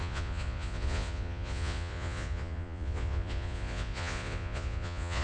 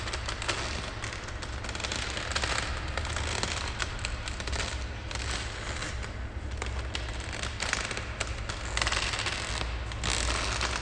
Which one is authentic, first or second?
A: second